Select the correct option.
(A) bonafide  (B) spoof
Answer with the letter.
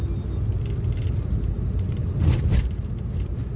A